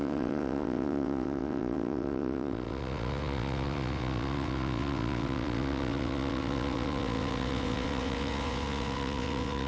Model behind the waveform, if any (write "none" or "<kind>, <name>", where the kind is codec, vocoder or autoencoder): vocoder, WaveNeXt